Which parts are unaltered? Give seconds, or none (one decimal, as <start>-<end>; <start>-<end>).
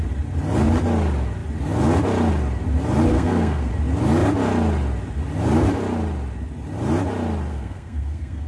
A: 0.0-3.1; 3.7-7.5